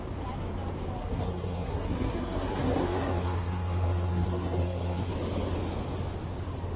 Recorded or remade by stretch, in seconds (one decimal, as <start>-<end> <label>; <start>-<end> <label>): 0.0-1.0 recorded; 1.0-5.1 remade; 5.1-6.8 recorded